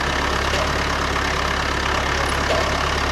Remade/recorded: recorded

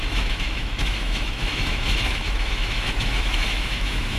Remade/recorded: remade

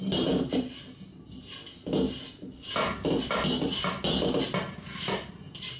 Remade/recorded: recorded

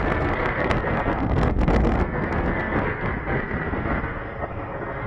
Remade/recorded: remade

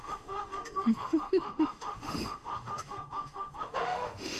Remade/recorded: remade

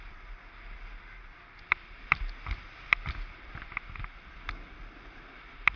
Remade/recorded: recorded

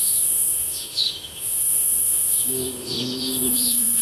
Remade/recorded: remade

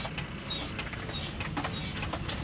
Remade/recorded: recorded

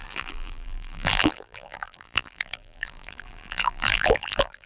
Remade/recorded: remade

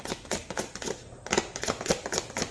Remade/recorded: recorded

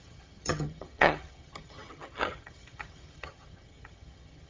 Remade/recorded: remade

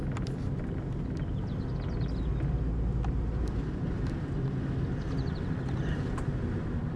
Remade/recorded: recorded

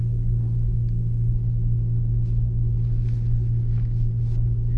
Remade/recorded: recorded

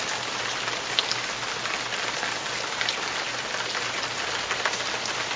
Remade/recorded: recorded